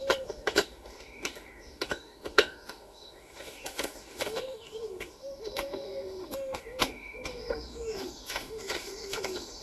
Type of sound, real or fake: fake